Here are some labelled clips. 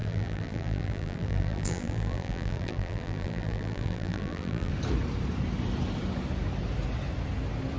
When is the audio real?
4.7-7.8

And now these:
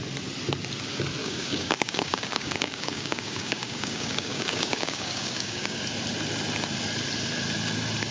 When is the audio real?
0.0-1.2; 5.8-8.1

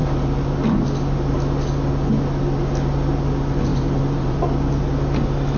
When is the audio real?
0.0-3.7; 4.4-5.6

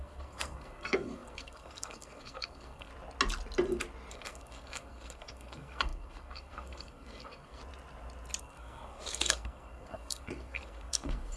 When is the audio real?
2.9-4.1; 7.6-8.4

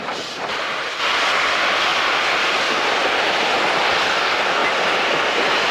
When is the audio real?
1.9-2.5